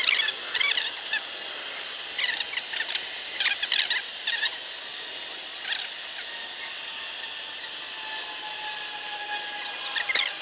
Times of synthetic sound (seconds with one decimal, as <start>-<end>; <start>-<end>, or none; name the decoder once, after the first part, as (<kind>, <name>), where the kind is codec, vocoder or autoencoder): none